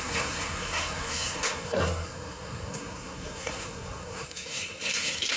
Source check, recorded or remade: remade